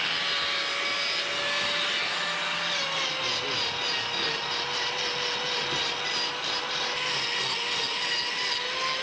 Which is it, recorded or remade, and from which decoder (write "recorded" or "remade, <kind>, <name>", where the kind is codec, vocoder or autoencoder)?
recorded